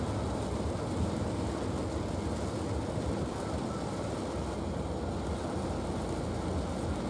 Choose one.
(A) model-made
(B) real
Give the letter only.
B